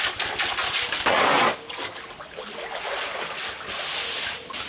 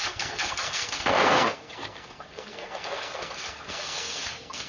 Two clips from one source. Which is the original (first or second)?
first